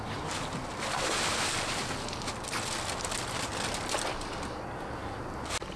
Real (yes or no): yes